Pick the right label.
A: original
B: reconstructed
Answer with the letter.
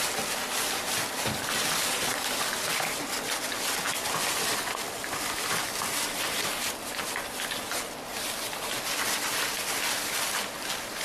A